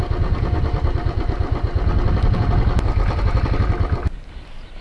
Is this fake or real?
real